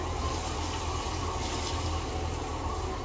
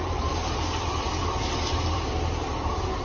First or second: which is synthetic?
second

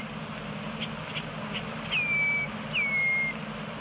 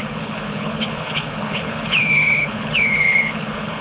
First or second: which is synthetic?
second